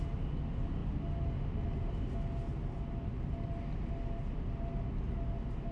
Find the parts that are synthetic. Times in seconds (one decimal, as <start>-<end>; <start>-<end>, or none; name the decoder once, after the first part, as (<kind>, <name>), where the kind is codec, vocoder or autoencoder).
none